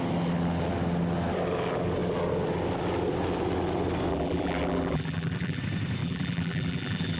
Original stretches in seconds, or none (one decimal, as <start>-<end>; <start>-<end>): 0.0-4.1; 5.6-6.0